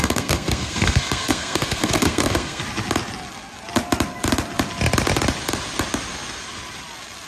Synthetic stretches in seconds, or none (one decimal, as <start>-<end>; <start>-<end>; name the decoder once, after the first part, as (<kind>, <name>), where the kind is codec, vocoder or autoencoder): 0.0-2.6 (codec, SNAC)